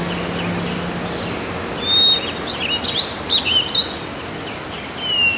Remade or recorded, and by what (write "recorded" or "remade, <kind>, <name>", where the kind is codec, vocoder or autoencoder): recorded